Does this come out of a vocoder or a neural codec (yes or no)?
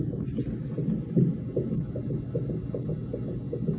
no